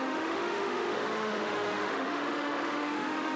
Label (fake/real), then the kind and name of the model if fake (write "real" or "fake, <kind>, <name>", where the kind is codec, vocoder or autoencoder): fake, autoencoder, DAC-VAE